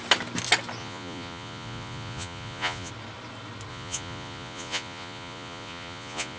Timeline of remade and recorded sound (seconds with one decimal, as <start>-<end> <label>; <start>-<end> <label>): 0.0-0.8 recorded; 0.8-2.9 remade; 2.9-3.7 recorded; 3.7-6.4 remade